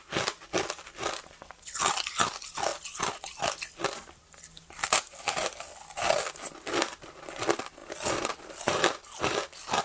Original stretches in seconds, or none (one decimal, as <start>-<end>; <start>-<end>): 0.0-9.8